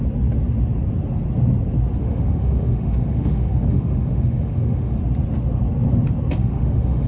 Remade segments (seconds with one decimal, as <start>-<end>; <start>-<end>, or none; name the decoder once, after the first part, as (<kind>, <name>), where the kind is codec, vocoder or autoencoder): 2.0-5.0 (autoencoder, DAC-VAE); 6.4-7.1